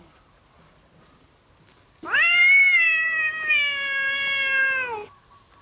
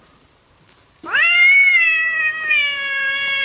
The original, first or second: first